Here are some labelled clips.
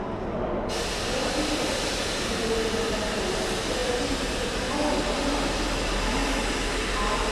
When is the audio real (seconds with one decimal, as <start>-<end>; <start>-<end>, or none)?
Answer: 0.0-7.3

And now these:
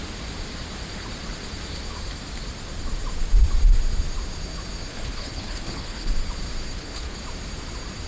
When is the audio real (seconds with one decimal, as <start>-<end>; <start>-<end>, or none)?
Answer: 0.0-4.9; 6.1-6.7; 7.2-8.1

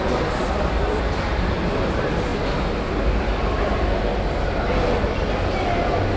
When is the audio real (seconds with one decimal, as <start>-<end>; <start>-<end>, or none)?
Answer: 0.0-6.2